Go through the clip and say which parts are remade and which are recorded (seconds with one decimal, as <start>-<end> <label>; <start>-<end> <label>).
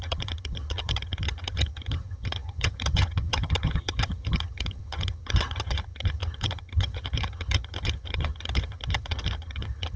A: 0.0-10.0 remade